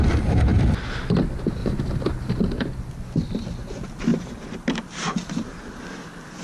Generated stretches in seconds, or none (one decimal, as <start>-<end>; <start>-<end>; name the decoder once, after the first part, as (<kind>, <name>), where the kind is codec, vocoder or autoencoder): 1.6-2.3 (vocoder, BigVGAN v2); 4.1-5.8